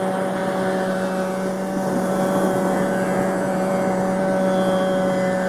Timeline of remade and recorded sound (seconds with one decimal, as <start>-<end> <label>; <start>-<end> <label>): 0.0-5.5 recorded